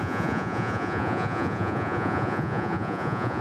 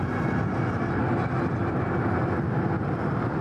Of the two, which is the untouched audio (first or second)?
second